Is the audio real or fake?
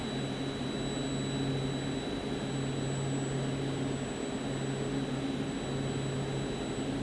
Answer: real